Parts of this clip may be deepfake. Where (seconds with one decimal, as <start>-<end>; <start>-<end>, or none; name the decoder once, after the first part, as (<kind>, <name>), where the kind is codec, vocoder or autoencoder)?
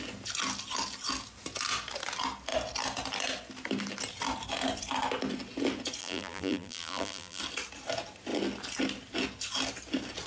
6.0-7.4 (vocoder, BigVGAN v2)